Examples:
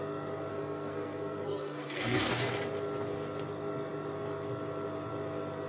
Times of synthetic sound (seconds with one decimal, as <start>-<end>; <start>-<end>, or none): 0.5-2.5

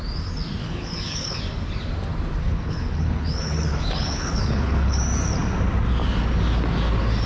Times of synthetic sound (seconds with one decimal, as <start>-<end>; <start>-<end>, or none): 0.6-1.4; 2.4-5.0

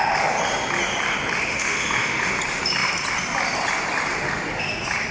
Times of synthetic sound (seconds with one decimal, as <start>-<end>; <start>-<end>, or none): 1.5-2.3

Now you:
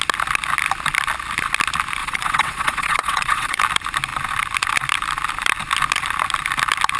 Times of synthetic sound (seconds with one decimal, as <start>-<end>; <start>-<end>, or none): 2.0-3.6